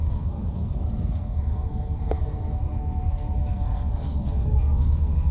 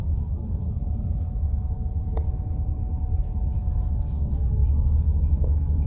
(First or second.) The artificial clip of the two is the first